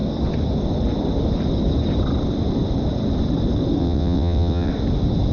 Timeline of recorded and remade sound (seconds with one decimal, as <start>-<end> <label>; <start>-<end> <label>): 0.0-3.8 recorded; 3.8-4.7 remade; 4.7-5.3 recorded